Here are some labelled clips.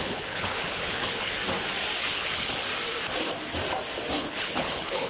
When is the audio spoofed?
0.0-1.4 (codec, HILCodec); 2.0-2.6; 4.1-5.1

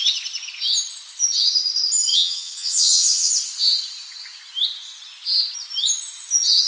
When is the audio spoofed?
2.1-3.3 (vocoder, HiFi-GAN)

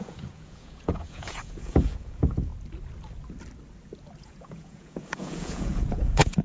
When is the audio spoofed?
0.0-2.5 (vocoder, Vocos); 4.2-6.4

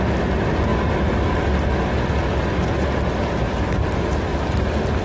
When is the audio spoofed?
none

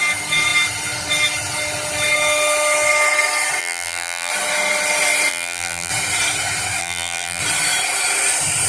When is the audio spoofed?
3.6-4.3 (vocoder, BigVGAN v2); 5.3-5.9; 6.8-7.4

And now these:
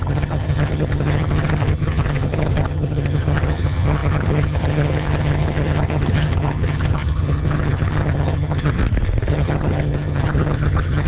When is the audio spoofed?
0.0-8.8 (vocoder, HiFi-GAN); 9.3-11.1

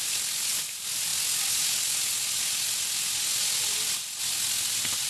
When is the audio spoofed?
none